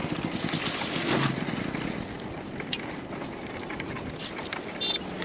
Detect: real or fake real